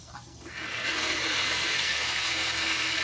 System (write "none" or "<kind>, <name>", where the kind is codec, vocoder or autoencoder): codec, SNAC